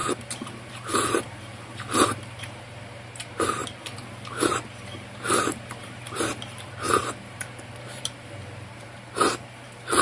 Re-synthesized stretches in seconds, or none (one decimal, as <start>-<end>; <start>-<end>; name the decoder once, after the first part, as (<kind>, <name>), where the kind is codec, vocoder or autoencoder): 0.0-10.0 (vocoder, BigVGAN v2)